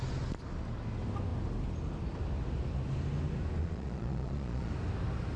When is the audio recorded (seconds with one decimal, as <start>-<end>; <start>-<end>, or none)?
0.0-3.6; 4.7-5.4